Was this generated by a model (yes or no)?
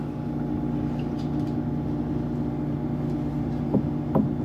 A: no